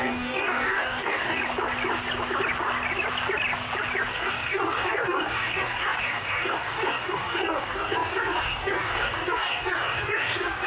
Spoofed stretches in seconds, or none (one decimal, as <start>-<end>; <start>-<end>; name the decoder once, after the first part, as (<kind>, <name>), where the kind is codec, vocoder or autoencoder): 0.0-1.4 (codec, DAC); 4.1-10.7